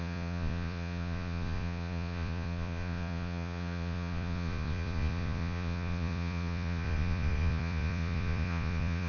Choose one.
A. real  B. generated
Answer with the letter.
B